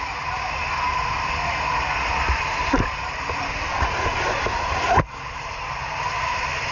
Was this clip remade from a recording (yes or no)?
no